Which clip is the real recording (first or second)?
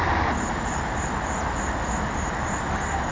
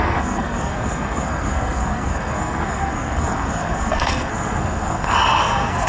first